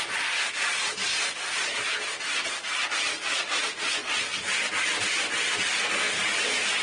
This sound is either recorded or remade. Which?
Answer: recorded